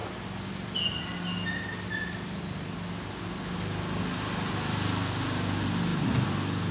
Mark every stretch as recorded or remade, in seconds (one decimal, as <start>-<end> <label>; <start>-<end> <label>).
0.0-6.7 recorded